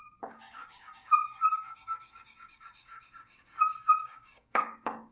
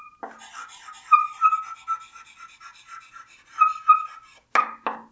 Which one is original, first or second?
second